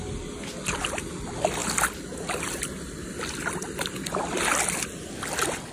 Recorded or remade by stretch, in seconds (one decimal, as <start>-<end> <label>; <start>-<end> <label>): 0.0-5.7 recorded